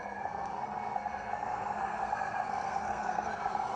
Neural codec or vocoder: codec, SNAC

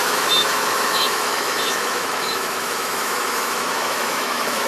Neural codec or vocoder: autoencoder, DAC-VAE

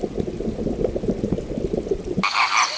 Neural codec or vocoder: none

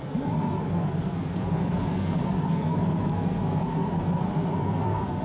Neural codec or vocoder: codec, SNAC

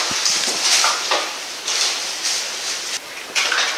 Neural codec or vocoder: none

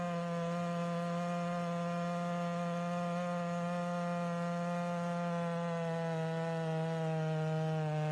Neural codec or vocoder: none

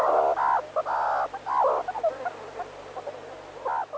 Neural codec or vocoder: none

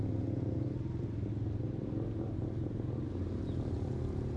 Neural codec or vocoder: none